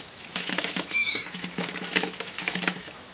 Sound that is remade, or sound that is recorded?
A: remade